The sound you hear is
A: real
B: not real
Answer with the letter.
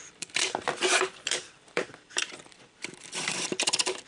B